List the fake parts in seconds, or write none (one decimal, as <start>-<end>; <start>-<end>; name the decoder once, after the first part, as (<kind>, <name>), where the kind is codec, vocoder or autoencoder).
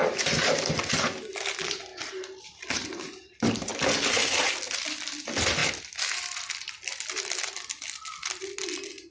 none